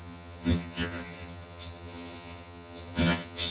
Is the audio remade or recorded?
remade